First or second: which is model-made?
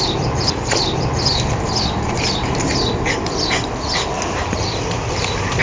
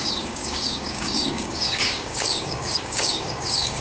second